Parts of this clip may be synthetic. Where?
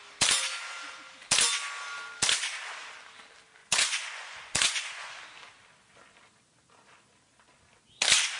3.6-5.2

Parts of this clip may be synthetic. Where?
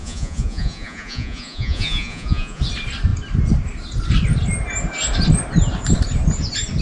0.0-2.6